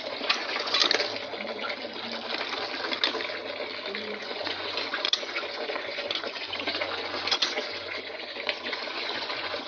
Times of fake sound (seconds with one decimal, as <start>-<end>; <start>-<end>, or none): 0.0-0.8; 4.2-9.7